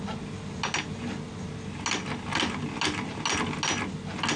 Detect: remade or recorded recorded